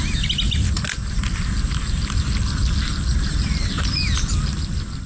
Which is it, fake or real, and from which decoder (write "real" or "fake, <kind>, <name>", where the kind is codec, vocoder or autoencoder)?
real